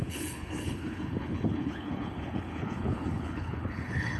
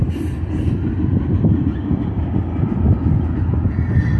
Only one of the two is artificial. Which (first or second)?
first